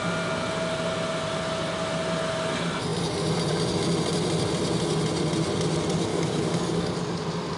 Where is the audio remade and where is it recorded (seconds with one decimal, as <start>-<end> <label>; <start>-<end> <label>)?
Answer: 0.0-6.1 recorded; 6.1-6.9 remade; 6.9-7.6 recorded